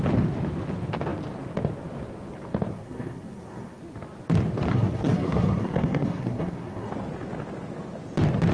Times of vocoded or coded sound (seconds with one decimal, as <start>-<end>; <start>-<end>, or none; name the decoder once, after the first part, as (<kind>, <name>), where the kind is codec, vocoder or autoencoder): 2.7-3.8 (codec, SNAC); 4.7-6.9